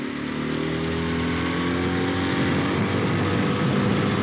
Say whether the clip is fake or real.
real